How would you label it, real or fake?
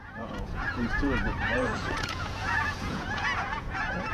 fake